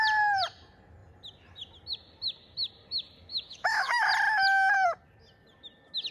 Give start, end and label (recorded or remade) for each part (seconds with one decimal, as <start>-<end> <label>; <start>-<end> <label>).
0.0-3.3 recorded; 3.3-4.1 remade; 4.1-6.1 recorded